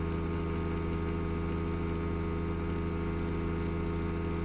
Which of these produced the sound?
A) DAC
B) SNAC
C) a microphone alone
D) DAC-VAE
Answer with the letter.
C